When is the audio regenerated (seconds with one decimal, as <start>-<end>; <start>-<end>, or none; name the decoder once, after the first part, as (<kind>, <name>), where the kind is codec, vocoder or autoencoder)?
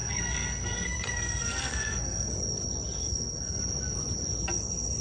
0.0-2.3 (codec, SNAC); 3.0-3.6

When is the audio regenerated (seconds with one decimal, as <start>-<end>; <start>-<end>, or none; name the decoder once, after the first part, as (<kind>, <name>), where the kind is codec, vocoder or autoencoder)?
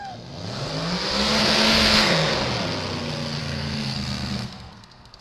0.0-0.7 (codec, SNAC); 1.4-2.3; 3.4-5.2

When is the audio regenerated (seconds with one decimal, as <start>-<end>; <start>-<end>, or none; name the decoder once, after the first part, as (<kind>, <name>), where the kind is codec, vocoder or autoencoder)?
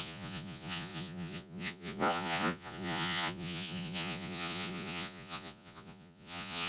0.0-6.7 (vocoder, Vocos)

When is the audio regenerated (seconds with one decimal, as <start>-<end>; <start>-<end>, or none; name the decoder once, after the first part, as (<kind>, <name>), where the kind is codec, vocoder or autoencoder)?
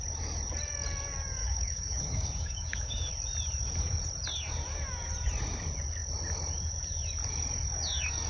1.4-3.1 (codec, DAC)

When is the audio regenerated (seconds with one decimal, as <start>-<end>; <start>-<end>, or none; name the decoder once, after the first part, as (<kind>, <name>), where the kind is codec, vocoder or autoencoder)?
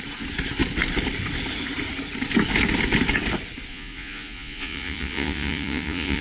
3.7-6.2 (vocoder, Vocos)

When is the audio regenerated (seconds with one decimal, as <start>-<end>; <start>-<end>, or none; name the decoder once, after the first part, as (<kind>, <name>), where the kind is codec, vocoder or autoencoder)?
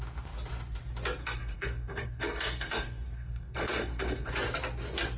1.2-4.3 (codec, SNAC)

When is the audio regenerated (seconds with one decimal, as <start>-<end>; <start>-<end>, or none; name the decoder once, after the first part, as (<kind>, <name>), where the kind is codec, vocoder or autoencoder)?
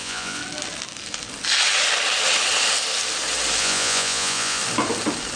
0.0-0.4 (vocoder, Vocos); 3.6-4.6